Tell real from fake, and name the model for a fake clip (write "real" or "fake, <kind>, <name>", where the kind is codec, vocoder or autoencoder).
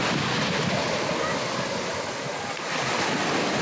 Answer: real